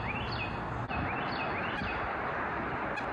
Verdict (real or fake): real